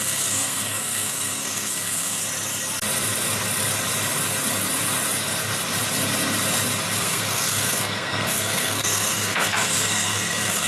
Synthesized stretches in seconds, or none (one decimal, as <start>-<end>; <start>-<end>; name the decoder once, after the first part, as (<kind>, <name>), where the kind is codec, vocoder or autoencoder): 0.0-2.2 (codec, SNAC); 7.0-10.7